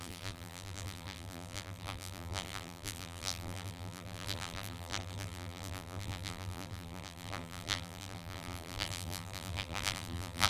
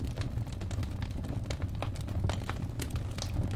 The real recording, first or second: second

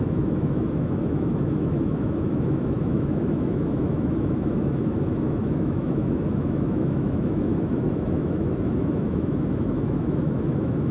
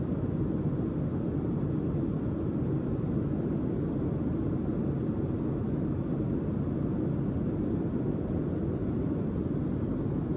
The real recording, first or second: second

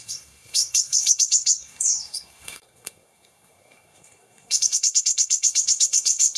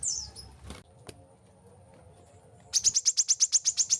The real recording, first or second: second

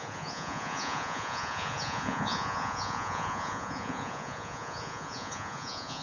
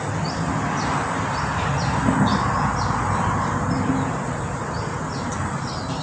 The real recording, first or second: second